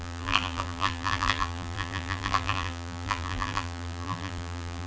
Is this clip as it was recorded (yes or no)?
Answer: no